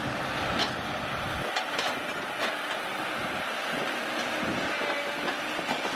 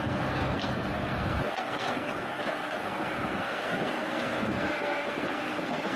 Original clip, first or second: first